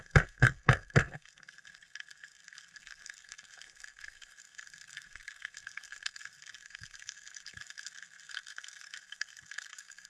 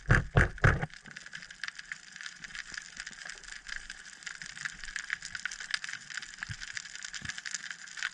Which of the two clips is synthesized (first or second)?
first